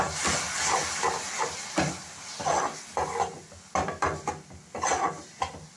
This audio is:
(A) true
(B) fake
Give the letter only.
A